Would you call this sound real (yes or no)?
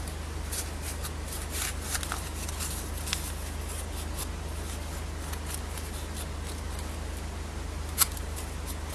yes